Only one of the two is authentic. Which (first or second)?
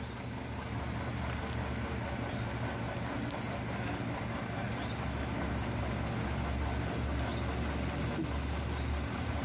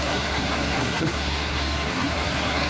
first